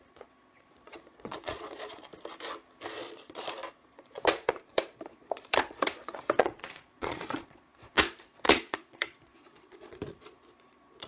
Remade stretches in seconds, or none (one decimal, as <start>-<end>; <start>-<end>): 0.0-2.1; 3.0-11.1